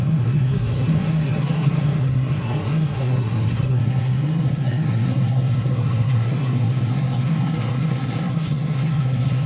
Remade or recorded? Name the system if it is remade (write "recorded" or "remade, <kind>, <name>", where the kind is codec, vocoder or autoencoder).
remade, codec, SNAC